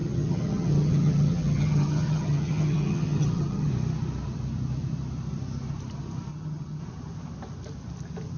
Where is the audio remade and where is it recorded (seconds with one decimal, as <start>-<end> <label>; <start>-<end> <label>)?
0.0-3.7 remade; 3.7-6.3 recorded; 6.3-6.8 remade; 6.8-8.4 recorded